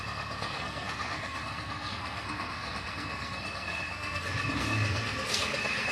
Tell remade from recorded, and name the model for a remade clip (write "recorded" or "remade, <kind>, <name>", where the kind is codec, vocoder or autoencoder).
remade, codec, SNAC